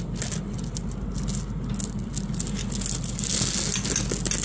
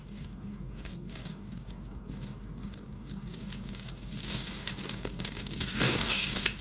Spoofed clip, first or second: second